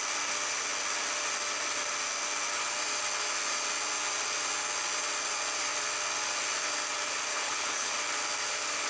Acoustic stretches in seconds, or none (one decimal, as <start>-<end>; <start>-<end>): 0.0-7.3; 7.9-8.9